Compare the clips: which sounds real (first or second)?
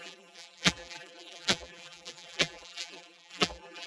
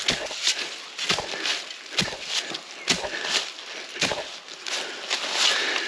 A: second